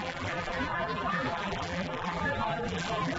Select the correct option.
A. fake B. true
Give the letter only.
A